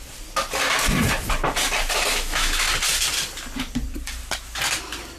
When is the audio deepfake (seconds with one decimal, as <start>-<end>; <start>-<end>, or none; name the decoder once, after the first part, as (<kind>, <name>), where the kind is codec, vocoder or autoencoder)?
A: 2.1-2.7 (autoencoder, DAC-VAE)